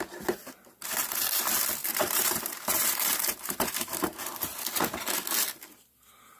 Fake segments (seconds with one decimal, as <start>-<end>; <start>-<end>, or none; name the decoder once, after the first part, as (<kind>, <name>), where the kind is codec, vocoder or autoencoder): 1.8-4.4 (vocoder, BigVGAN v2)